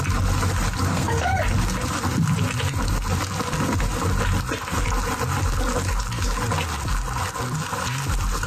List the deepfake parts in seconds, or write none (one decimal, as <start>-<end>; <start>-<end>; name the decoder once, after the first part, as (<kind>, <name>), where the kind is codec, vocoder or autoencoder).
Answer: 0.9-1.4 (codec, SNAC)